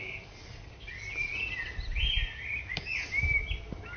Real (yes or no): yes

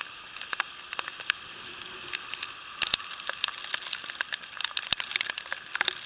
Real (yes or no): yes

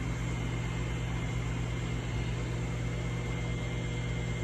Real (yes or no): yes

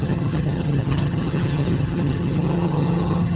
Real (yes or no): no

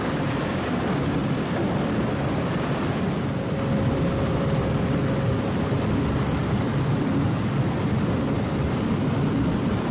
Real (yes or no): no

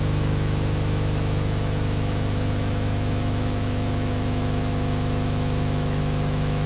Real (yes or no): no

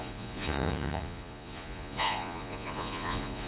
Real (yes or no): no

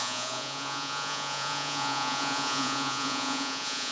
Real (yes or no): no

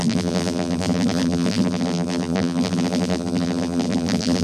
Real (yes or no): no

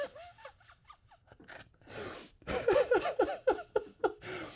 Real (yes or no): yes